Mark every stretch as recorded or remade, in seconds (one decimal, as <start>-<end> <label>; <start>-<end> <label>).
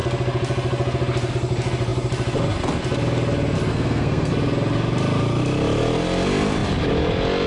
0.0-3.7 recorded; 3.7-4.3 remade; 4.3-7.5 recorded